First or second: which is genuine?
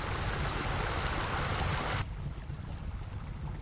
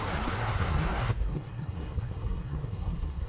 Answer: first